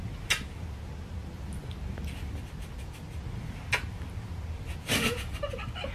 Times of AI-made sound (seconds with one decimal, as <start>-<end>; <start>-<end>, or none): none